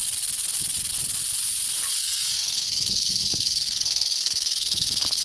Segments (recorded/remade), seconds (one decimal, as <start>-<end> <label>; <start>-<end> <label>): 0.0-2.0 recorded; 2.0-5.2 remade